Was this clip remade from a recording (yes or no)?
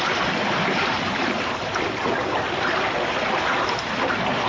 no